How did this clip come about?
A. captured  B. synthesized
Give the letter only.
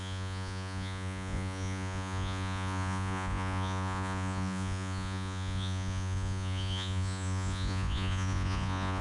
B